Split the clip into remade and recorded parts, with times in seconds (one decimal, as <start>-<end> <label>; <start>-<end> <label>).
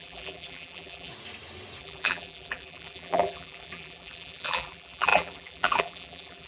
0.0-1.1 remade; 1.1-1.8 recorded; 1.8-6.5 remade